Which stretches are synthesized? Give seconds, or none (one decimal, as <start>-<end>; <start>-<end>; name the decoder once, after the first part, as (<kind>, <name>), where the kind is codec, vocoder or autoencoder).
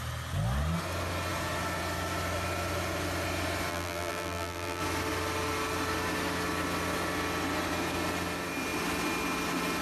3.7-4.8 (vocoder, BigVGAN v2)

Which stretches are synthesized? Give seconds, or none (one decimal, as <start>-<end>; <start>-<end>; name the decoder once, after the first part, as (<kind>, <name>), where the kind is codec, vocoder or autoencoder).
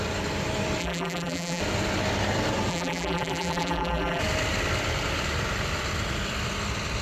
0.8-1.6 (vocoder, BigVGAN v2); 2.7-4.2